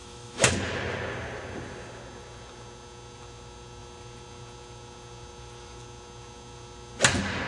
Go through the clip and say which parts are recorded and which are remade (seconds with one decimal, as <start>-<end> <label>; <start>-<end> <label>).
0.0-0.5 remade; 0.5-7.5 recorded

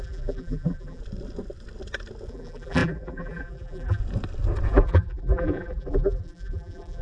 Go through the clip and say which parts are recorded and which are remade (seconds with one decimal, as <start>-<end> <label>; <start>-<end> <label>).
0.0-1.0 remade; 1.0-2.3 recorded; 2.3-4.0 remade; 4.0-4.7 recorded; 4.7-7.0 remade

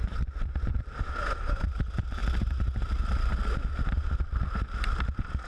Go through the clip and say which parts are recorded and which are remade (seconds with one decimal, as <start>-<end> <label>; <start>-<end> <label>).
0.0-0.8 recorded; 0.8-2.2 remade; 2.2-2.8 recorded; 2.8-3.3 remade; 3.3-4.5 recorded; 4.5-5.5 remade

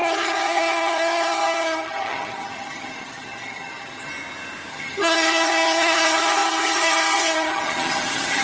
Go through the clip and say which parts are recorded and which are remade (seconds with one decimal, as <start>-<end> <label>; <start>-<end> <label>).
0.0-4.1 remade; 4.1-4.7 recorded; 4.7-8.4 remade